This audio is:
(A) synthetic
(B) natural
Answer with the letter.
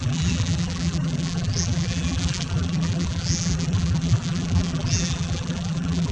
A